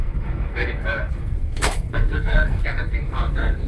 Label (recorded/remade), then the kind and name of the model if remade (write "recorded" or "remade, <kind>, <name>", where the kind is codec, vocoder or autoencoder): remade, codec, SNAC